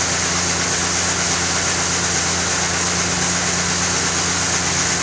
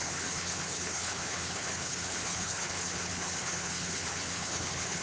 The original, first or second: first